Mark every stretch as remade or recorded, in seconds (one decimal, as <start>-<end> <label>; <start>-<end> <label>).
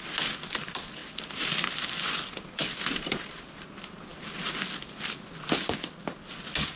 0.0-6.8 recorded